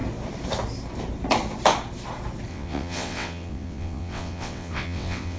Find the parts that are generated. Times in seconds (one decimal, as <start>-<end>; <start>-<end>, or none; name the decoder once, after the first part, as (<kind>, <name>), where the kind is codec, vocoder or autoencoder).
2.5-5.4 (vocoder, WaveNeXt)